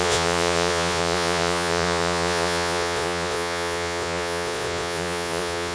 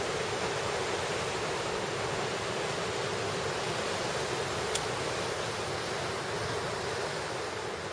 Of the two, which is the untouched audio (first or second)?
second